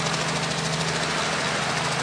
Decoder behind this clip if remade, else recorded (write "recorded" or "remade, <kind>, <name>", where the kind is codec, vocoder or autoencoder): recorded